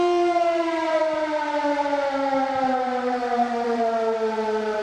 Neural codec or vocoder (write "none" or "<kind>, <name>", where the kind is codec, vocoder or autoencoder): vocoder, BigVGAN v2